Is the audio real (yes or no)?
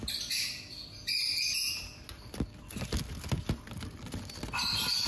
yes